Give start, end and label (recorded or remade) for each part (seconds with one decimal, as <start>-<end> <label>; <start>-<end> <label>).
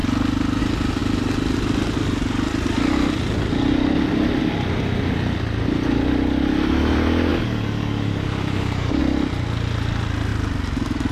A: 0.0-7.3 recorded; 7.3-9.0 remade; 9.0-11.1 recorded